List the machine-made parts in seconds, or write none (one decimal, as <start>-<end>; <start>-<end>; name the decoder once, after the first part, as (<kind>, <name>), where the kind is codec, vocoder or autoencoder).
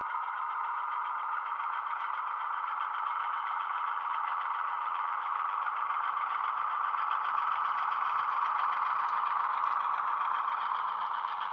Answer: 3.0-5.7 (vocoder, BigVGAN v2); 11.0-11.5